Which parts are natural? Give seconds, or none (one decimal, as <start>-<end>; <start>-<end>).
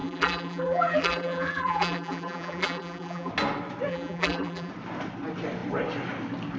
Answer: 3.3-3.9; 4.7-6.6